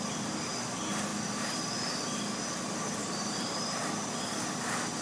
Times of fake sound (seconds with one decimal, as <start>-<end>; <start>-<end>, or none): 1.1-1.7; 3.0-3.9